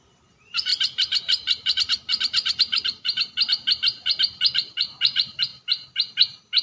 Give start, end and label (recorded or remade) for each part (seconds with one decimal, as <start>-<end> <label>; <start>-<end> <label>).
0.0-5.5 remade; 5.5-6.6 recorded